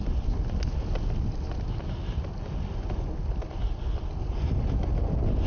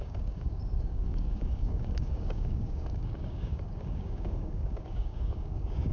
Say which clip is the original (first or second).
first